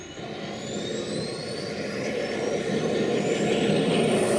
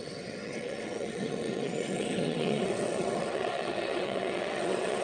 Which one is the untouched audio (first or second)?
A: first